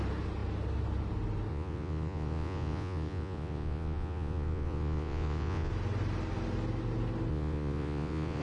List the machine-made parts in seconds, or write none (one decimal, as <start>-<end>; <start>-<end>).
1.5-5.7; 7.3-8.4

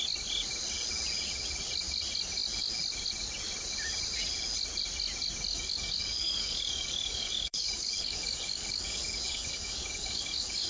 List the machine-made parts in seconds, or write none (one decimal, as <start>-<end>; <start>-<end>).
5.5-10.7